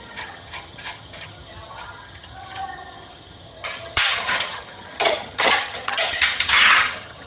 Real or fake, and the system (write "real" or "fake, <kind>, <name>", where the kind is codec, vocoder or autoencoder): fake, vocoder, HiFi-GAN